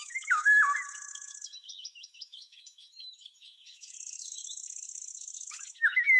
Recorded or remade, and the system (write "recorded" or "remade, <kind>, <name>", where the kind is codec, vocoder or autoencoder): remade, autoencoder, DAC-VAE